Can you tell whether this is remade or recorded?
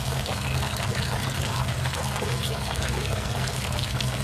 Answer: remade